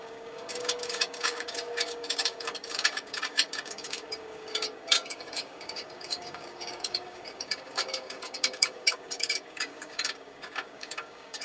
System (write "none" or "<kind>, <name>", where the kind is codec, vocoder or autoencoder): codec, DAC